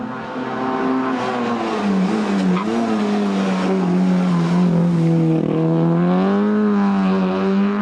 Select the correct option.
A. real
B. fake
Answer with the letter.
A